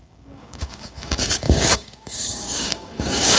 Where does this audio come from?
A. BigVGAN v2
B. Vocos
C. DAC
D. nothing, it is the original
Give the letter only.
C